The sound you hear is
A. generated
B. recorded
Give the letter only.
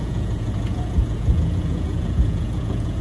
A